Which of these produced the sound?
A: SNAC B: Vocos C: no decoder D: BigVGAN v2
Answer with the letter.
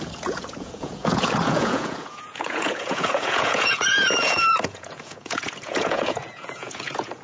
B